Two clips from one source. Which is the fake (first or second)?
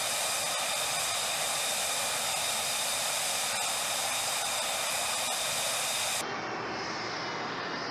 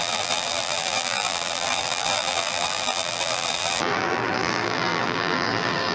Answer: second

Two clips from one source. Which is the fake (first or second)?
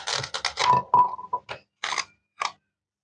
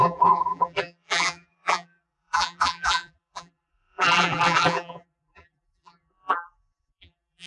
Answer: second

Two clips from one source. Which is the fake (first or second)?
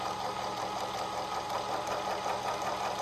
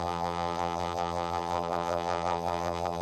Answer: second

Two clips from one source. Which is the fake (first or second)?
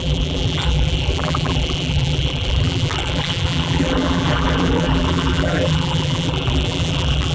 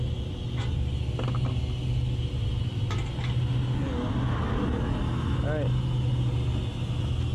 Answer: first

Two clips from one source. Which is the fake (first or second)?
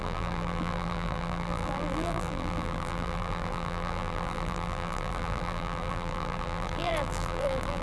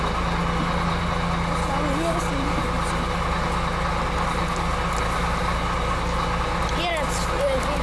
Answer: first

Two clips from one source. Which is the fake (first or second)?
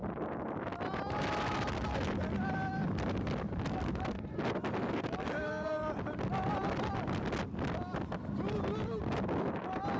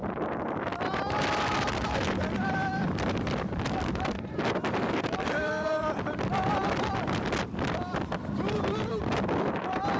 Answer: second